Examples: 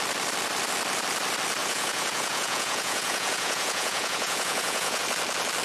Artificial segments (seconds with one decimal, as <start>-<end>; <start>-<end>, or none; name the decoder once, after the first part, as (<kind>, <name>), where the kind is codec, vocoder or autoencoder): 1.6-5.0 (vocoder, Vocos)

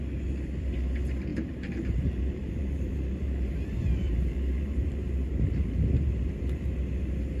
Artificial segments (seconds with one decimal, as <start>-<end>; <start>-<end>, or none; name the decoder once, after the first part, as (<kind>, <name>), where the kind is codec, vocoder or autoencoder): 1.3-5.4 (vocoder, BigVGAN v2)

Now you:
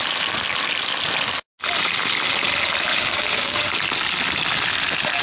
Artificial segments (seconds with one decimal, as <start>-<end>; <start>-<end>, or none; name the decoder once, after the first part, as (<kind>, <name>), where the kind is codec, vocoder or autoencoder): 2.9-3.7 (codec, DAC)